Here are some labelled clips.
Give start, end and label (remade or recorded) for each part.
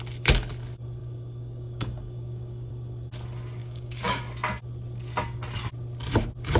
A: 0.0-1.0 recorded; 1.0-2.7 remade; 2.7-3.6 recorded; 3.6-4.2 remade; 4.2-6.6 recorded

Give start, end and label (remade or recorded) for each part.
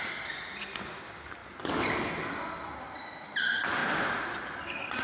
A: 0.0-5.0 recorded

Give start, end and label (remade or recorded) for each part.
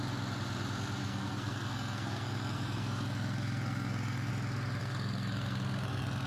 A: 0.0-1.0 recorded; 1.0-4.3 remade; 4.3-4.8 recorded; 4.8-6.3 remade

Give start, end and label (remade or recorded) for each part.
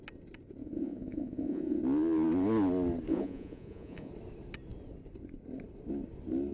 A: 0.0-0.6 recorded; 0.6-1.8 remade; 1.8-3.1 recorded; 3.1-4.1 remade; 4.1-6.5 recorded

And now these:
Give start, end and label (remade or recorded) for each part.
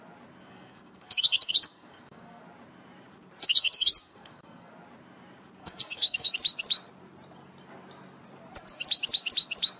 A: 0.0-0.4 recorded; 0.4-2.4 remade; 2.4-3.4 recorded; 3.4-4.7 remade; 4.7-5.6 recorded; 5.6-6.3 remade; 6.3-9.8 recorded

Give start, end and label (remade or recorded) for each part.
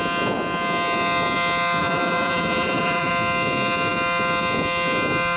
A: 0.0-1.8 recorded; 1.8-3.1 remade; 3.1-5.4 recorded